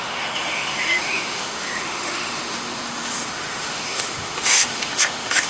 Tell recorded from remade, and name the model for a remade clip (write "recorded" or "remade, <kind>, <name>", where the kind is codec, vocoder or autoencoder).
remade, autoencoder, DAC-VAE